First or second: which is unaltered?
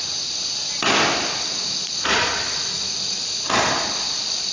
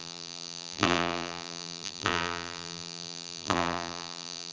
first